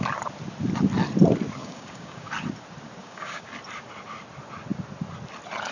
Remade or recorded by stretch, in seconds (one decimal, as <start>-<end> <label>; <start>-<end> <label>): 0.0-1.6 recorded; 1.6-2.3 remade; 2.3-3.0 recorded; 3.0-3.5 remade; 3.5-5.7 recorded